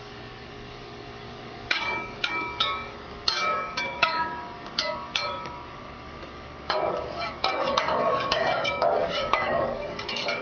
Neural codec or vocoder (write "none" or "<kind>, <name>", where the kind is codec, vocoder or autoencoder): codec, DAC